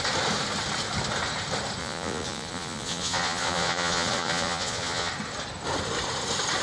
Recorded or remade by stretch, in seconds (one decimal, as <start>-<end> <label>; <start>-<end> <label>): 0.0-1.8 recorded; 1.8-5.1 remade; 5.1-6.6 recorded